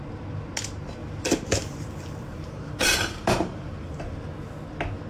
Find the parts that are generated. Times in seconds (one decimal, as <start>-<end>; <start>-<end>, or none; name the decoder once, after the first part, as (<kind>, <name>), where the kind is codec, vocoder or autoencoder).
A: 1.0-4.1 (vocoder, BigVGAN v2)